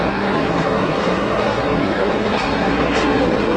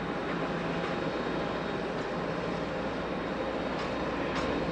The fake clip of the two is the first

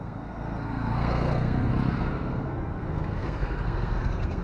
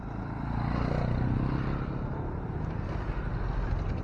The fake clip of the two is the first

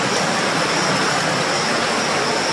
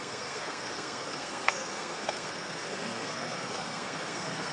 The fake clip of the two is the second